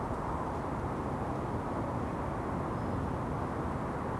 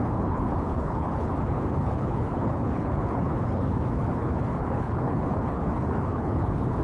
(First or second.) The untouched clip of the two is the first